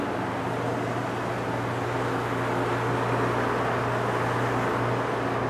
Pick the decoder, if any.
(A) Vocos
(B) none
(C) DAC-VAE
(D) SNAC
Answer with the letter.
B